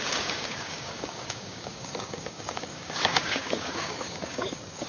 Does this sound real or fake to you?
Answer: fake